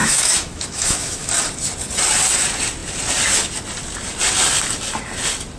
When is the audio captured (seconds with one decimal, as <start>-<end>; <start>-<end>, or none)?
1.3-5.6